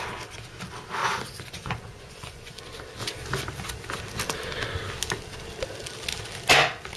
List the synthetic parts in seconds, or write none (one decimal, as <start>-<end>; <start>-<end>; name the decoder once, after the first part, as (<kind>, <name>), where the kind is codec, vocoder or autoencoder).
1.0-2.6 (vocoder, Vocos)